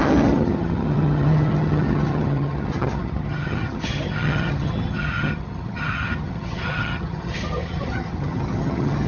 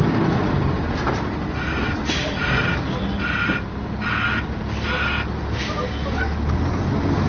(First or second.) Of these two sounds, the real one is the second